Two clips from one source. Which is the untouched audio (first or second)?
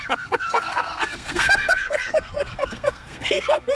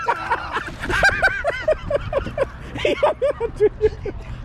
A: second